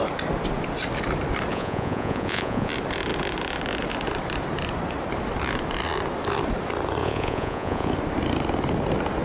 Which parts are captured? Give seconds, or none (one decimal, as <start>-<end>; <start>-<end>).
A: 0.0-1.5; 2.7-7.0; 7.9-9.2